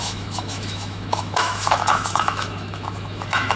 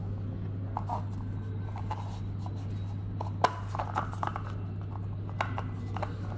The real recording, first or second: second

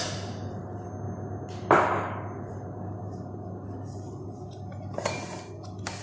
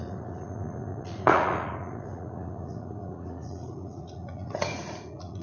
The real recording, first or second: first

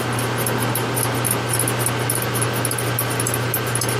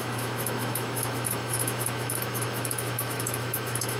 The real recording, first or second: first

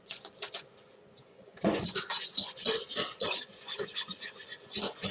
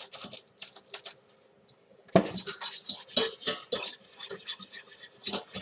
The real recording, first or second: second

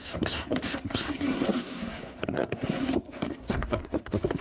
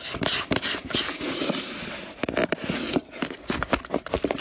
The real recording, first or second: second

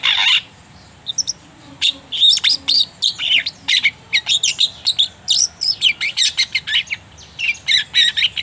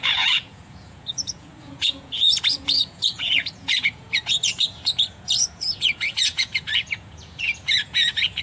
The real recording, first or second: first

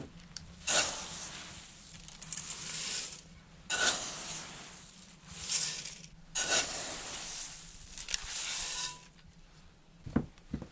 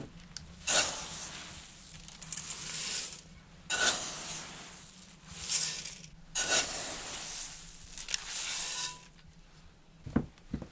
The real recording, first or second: second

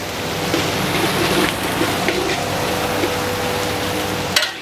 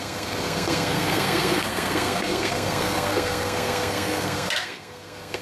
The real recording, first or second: first